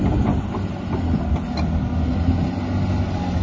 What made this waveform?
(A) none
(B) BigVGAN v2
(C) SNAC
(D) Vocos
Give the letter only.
A